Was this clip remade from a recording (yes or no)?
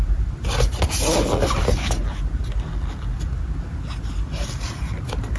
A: no